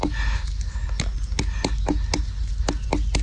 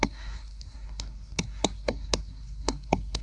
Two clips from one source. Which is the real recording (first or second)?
first